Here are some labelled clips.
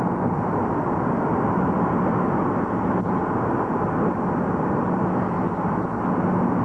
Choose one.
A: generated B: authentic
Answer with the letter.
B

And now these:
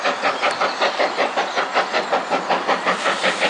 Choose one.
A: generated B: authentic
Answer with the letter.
B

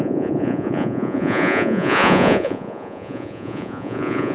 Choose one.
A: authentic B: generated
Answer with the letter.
B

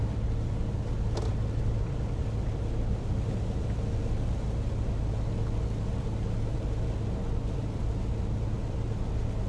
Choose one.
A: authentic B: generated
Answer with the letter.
A